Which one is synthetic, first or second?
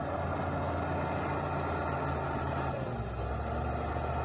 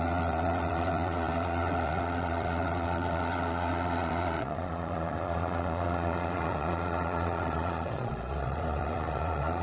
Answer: second